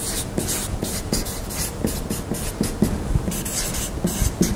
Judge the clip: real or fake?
real